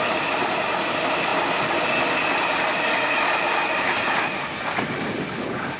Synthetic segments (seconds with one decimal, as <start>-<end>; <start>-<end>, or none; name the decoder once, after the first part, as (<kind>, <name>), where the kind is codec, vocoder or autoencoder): none